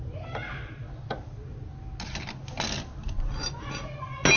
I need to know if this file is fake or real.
real